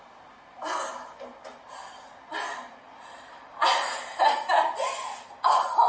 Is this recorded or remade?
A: recorded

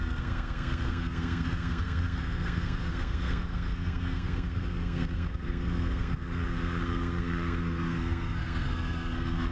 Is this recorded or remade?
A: remade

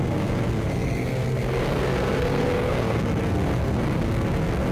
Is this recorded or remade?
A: remade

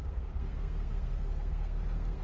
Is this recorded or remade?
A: remade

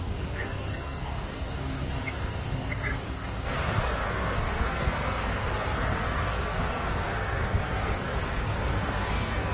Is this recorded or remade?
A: remade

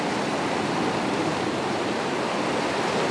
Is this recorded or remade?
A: recorded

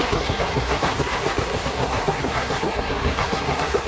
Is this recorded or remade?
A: remade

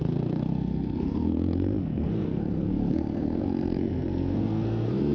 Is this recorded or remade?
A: remade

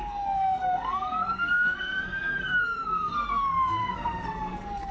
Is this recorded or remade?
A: remade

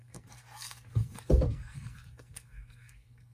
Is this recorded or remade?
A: remade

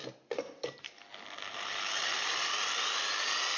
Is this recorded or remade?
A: recorded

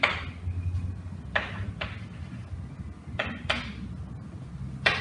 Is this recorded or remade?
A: recorded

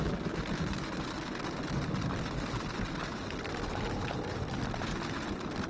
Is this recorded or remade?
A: recorded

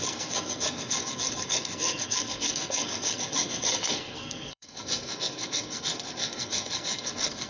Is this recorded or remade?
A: remade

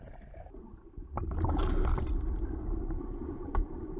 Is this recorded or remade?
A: recorded